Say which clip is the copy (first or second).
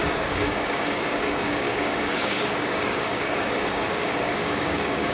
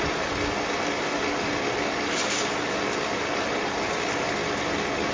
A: first